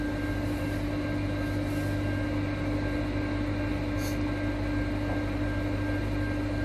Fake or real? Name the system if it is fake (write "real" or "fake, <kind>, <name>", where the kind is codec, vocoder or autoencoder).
real